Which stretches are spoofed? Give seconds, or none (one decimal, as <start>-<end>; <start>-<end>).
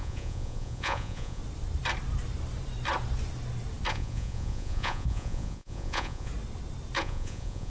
0.0-1.4; 3.9-6.3; 7.0-7.7